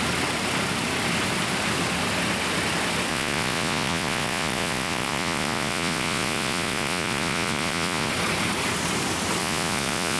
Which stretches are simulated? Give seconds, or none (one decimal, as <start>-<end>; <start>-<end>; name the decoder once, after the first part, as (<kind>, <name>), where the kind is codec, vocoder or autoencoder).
3.1-8.1 (vocoder, Vocos); 9.4-10.2